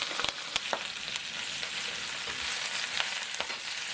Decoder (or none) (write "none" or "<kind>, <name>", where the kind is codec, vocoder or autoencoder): none